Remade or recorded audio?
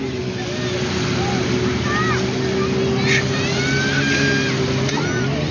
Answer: recorded